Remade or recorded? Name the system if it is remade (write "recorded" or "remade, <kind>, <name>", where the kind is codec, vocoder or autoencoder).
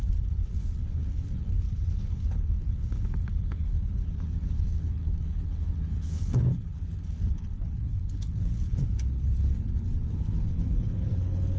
remade, codec, HILCodec